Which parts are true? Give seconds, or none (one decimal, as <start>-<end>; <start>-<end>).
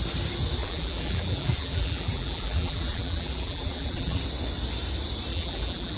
0.0-0.6; 4.2-5.3